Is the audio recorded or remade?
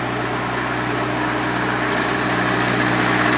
recorded